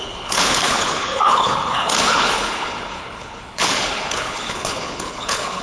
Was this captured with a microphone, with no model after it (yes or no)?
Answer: no